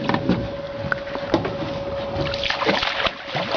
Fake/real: real